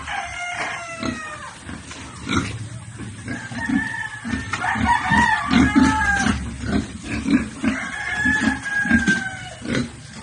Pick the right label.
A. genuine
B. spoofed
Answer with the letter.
B